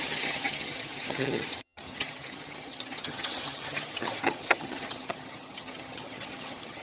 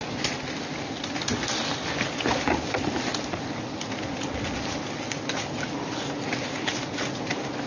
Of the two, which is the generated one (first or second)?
first